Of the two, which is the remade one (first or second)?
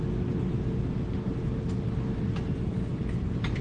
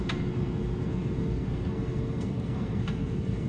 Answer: second